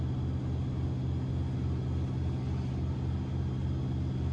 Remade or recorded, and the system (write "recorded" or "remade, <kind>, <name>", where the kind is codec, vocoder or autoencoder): recorded